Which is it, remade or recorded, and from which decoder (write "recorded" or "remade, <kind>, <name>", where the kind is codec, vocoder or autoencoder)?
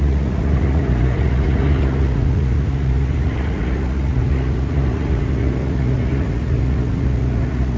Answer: remade, vocoder, Vocos